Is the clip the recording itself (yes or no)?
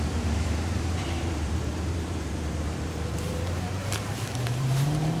no